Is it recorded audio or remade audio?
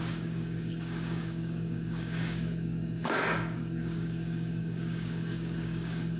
remade